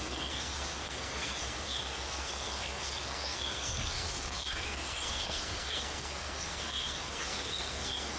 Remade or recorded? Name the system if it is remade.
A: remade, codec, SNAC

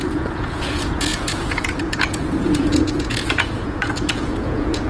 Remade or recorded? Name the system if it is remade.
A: remade, vocoder, Vocos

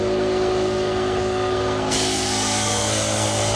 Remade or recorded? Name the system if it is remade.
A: remade, codec, SNAC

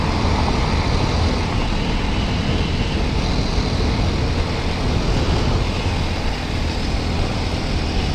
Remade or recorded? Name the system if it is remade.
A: recorded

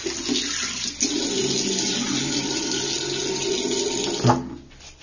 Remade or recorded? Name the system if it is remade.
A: recorded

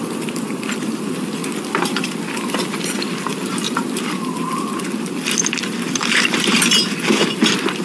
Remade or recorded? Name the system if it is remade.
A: remade, vocoder, BigVGAN v2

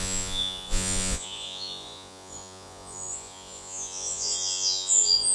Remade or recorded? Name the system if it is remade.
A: remade, vocoder, Vocos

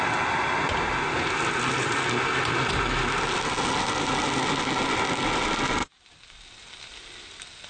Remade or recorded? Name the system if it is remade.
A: recorded